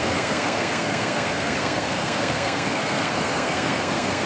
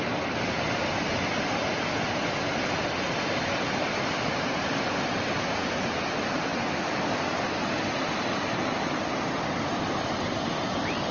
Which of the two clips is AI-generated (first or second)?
first